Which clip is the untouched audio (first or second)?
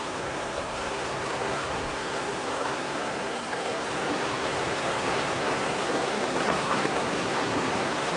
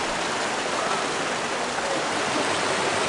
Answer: second